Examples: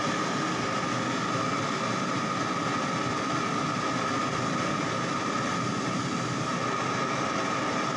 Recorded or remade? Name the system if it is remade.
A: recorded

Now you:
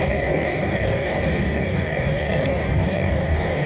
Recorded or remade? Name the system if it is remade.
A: remade, codec, DAC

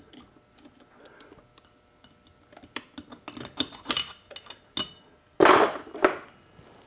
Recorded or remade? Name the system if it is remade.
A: recorded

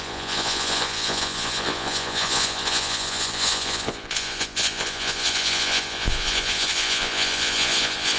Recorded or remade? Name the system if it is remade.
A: remade, vocoder, Vocos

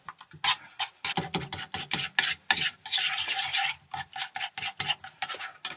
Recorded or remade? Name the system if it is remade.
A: recorded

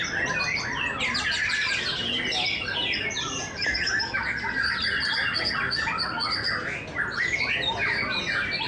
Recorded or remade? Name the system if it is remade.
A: recorded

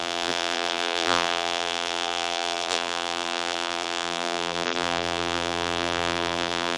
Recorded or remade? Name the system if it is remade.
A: remade, vocoder, BigVGAN v2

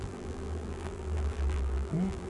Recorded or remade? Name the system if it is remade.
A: remade, vocoder, BigVGAN v2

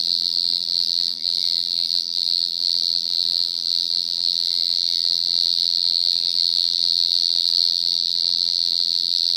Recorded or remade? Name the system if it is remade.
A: remade, vocoder, BigVGAN v2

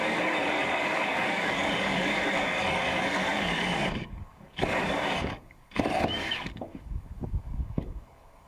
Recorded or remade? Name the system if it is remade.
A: remade, codec, DAC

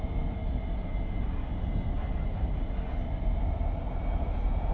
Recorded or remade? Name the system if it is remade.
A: recorded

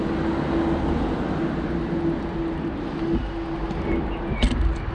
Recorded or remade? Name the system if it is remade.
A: recorded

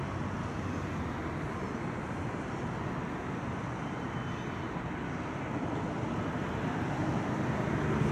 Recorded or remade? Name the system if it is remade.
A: recorded